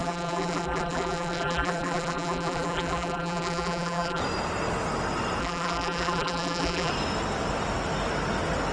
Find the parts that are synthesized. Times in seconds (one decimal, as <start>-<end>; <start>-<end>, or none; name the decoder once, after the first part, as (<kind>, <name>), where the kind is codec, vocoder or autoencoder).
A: 0.0-4.2 (vocoder, BigVGAN v2); 5.4-6.9